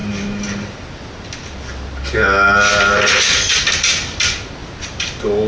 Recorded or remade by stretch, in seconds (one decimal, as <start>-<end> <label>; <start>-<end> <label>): 0.0-5.5 recorded